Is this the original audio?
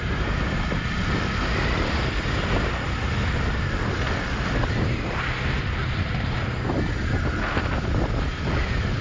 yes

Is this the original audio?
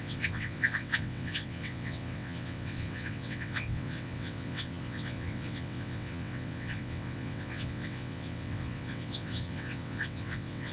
no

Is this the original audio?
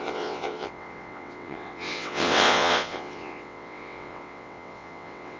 no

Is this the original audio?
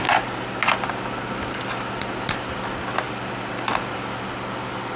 yes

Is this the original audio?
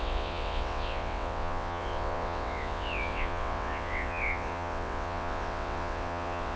no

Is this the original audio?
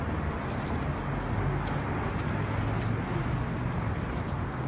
yes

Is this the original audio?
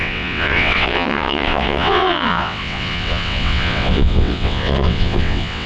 no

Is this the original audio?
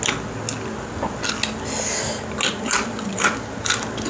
yes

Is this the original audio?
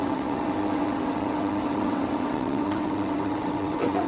no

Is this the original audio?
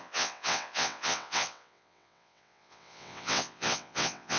no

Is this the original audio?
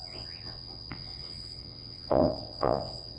no